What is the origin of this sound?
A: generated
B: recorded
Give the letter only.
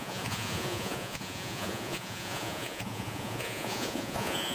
A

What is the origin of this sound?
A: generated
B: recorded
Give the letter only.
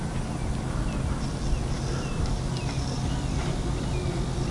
B